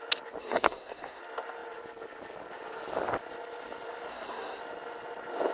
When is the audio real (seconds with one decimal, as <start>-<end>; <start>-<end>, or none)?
0.0-0.4; 1.2-4.1; 4.6-5.5